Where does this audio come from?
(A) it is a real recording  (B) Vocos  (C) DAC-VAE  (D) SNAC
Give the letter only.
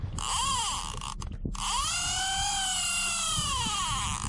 A